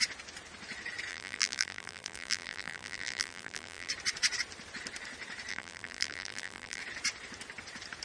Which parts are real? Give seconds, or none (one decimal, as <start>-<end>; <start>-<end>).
0.0-1.1; 3.9-5.5; 6.8-8.0